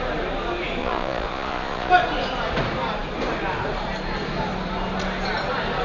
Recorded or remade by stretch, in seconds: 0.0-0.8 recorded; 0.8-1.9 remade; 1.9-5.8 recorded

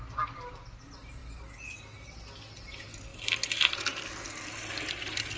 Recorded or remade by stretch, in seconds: 0.0-5.4 recorded